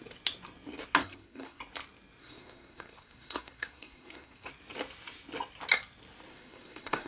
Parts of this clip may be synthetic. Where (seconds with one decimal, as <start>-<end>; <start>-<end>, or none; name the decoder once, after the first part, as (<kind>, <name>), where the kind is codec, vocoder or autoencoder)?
1.0-1.6 (codec, SNAC); 2.2-4.5; 6.3-7.1